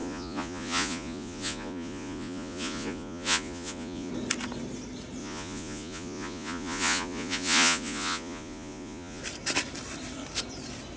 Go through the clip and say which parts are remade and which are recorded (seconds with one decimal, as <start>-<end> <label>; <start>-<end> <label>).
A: 0.0-4.1 remade; 4.1-5.2 recorded; 5.2-9.2 remade; 9.2-11.0 recorded